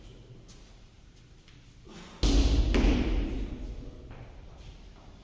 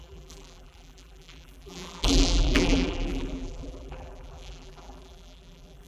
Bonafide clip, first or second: first